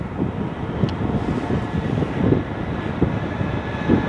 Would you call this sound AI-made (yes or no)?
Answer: no